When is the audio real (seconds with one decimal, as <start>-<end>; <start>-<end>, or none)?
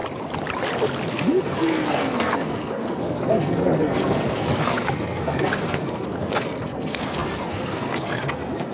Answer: 0.0-1.1